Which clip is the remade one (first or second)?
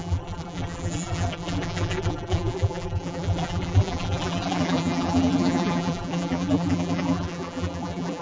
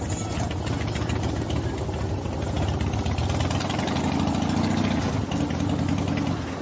first